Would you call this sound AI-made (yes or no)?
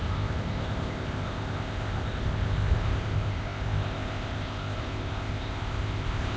yes